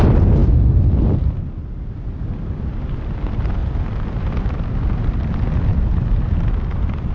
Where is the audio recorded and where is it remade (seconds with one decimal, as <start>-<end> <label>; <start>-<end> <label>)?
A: 0.0-5.7 recorded; 5.7-6.2 remade; 6.2-7.1 recorded